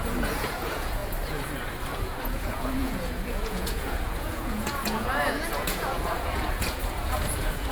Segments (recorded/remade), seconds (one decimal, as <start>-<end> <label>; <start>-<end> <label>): 0.0-1.0 remade; 1.0-2.0 recorded; 2.0-7.7 remade